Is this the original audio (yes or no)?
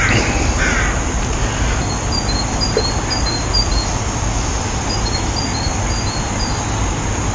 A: yes